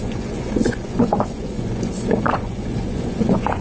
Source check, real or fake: fake